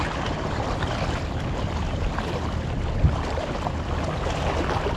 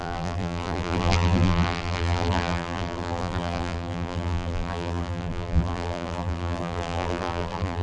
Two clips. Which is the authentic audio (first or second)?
first